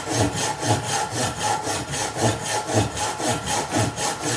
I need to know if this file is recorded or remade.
recorded